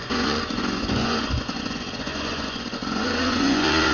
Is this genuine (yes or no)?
no